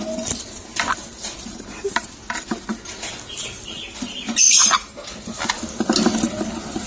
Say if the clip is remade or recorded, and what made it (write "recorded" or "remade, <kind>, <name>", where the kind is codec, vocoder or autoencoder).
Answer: recorded